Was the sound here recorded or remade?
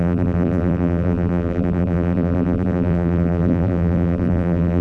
remade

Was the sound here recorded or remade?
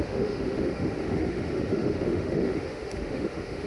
remade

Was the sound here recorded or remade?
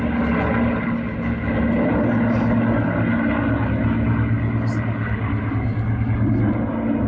recorded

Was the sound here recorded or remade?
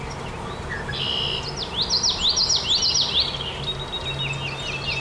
recorded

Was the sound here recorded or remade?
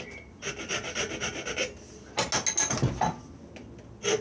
recorded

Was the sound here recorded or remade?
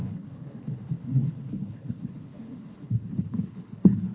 remade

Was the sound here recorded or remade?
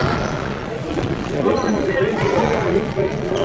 remade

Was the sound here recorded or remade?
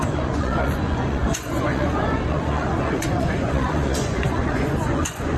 remade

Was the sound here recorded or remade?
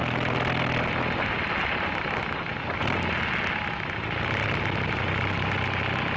recorded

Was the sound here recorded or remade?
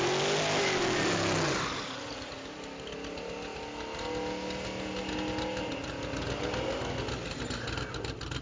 recorded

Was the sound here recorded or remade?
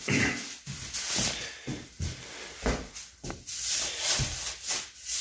recorded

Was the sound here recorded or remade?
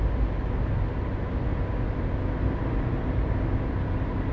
recorded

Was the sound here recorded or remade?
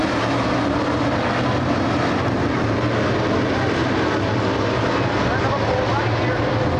recorded